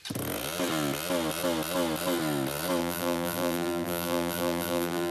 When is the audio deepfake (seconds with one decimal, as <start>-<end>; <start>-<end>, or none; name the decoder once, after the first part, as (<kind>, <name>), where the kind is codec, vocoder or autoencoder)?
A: 2.8-5.1 (vocoder, BigVGAN v2)